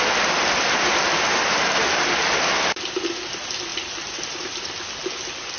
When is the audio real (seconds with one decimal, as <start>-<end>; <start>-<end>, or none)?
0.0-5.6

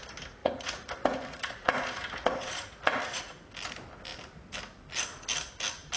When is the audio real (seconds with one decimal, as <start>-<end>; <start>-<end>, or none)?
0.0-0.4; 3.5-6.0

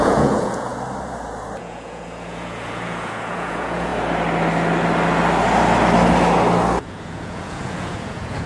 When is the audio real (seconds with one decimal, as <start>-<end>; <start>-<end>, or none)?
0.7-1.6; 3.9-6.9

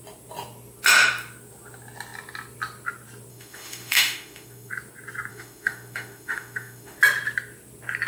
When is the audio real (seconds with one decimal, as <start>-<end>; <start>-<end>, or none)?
0.0-3.3; 4.7-5.3; 7.0-8.1

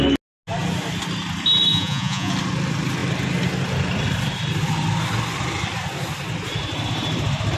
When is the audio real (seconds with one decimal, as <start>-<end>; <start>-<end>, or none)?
0.0-1.7; 2.3-7.6